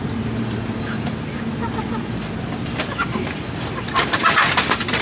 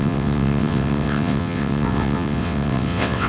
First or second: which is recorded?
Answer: first